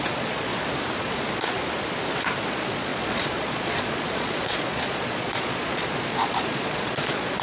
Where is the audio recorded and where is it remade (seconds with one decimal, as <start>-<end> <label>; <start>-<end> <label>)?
0.0-0.5 remade; 0.5-1.0 recorded; 1.0-1.6 remade; 1.6-2.5 recorded; 2.5-7.4 remade